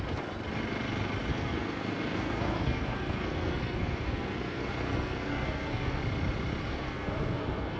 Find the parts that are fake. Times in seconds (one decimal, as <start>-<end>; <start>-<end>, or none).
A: 1.3-6.0; 6.7-7.8